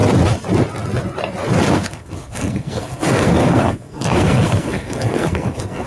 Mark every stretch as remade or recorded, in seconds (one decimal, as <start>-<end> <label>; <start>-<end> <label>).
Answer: 0.0-1.7 recorded; 1.7-5.9 remade